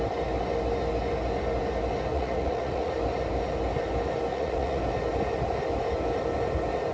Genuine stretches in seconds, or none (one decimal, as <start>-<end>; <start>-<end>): 0.0-2.1; 2.9-4.3; 4.8-6.9

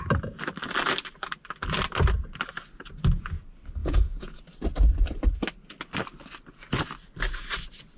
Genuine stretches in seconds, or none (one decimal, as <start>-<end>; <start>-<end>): 0.0-3.8; 4.4-8.0

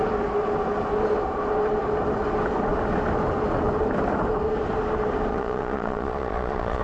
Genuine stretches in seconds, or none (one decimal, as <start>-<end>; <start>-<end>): 0.0-5.3

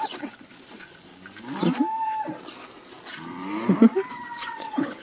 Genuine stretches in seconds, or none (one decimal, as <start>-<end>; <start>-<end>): 1.1-4.1

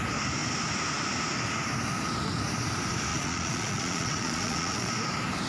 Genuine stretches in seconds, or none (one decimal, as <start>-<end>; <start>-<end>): 0.0-3.1; 4.9-5.5

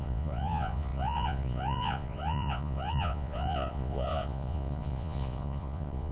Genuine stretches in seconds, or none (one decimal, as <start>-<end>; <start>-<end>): none

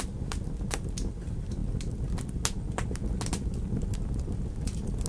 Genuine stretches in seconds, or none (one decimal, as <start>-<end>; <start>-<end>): 0.0-5.1

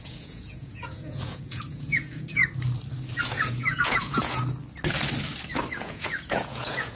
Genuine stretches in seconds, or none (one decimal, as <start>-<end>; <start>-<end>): 2.4-3.2; 4.4-5.8